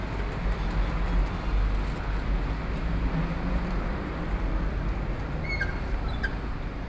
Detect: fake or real real